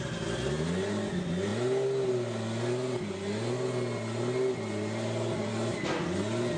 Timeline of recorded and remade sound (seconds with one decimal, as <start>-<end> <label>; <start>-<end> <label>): 0.0-6.6 recorded